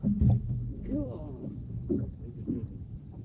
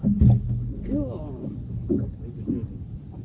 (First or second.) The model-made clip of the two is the first